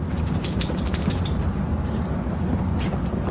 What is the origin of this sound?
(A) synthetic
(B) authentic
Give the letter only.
B